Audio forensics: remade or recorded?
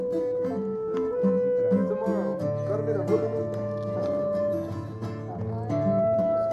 recorded